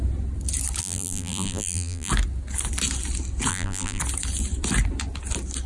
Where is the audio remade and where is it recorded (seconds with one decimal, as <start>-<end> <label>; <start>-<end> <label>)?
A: 0.0-0.8 recorded; 0.8-2.1 remade; 2.1-3.5 recorded; 3.5-4.0 remade; 4.0-5.7 recorded